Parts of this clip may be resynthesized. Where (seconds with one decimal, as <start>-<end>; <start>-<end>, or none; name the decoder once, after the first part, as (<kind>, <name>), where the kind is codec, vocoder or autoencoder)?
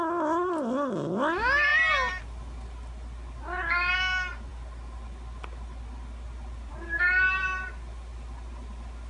none